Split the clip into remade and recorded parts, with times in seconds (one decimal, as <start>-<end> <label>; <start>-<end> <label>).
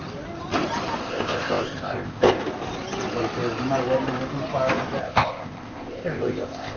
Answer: 0.0-1.0 recorded; 1.0-2.4 remade; 2.4-5.0 recorded; 5.0-6.8 remade